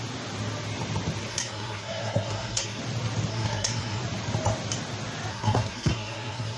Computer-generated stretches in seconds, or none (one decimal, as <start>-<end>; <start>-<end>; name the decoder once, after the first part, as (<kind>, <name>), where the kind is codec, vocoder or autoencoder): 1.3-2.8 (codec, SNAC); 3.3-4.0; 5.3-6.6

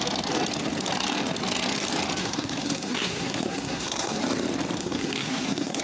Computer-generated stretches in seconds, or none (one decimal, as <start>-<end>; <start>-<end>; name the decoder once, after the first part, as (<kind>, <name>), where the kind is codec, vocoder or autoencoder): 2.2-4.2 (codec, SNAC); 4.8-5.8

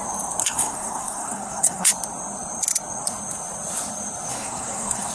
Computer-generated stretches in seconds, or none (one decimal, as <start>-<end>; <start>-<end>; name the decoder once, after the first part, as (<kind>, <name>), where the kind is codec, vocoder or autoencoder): 0.4-1.9 (codec, SNAC); 4.3-5.1